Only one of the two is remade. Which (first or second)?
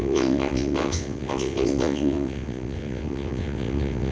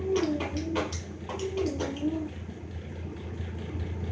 first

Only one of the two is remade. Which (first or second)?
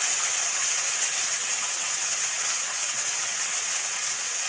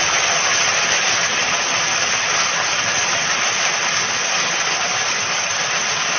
first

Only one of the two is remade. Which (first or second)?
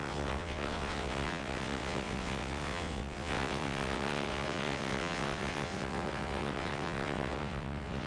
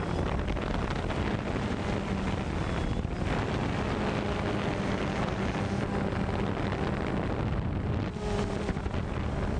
first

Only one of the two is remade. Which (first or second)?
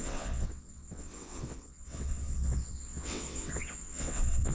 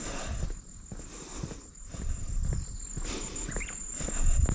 first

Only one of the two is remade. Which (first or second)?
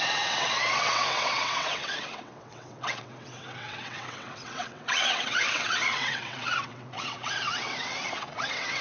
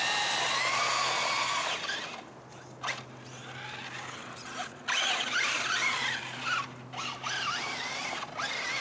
first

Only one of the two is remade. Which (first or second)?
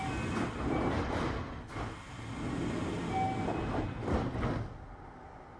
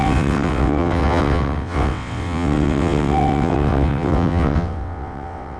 second